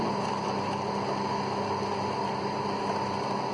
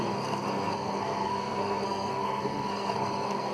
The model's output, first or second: second